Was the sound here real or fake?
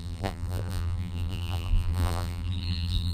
fake